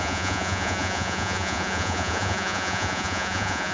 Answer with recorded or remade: remade